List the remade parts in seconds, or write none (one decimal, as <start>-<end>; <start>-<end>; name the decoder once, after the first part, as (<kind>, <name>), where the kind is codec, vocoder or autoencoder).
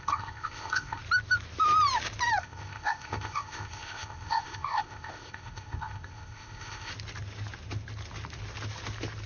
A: 0.0-1.0 (codec, ZipCodec); 2.4-6.9